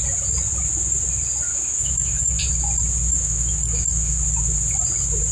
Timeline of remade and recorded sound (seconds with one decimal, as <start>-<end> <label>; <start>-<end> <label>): 0.0-1.5 recorded; 1.5-2.4 remade; 2.4-3.1 recorded; 3.1-4.2 remade; 4.2-5.3 recorded